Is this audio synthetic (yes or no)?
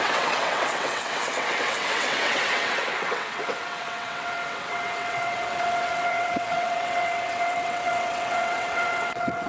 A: yes